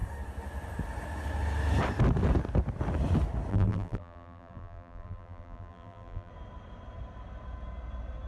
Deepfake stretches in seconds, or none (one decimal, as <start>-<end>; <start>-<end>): 3.5-6.3